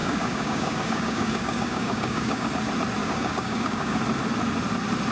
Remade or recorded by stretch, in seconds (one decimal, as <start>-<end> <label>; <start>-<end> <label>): 0.0-2.5 remade; 2.5-3.0 recorded; 3.0-4.0 remade; 4.0-5.1 recorded